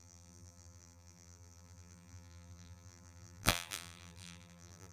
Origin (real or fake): fake